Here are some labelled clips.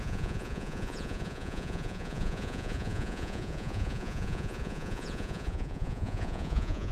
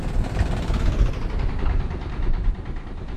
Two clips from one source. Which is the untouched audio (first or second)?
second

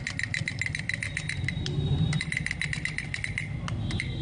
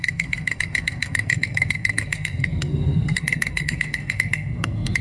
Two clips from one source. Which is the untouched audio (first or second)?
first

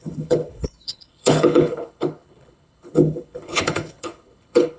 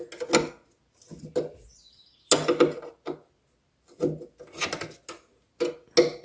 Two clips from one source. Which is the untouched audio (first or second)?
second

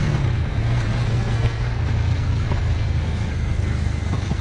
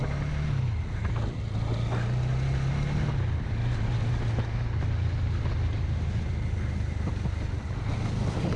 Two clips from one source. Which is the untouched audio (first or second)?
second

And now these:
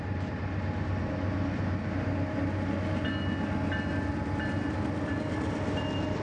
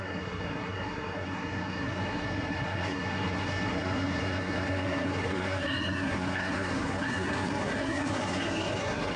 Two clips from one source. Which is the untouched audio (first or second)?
first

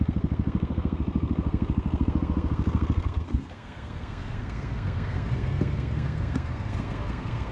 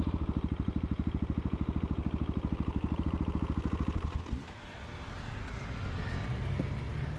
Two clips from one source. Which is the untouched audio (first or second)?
second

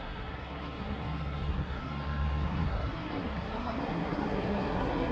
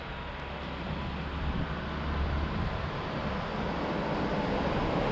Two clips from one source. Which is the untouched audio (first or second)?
second